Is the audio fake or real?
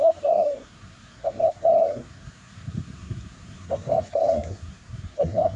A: fake